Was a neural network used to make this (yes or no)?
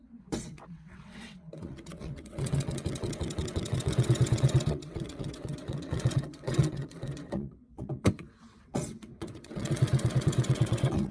yes